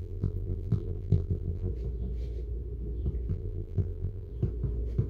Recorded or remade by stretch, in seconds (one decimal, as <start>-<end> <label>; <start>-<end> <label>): 0.0-1.7 remade; 1.7-3.3 recorded; 3.3-4.3 remade; 4.3-5.1 recorded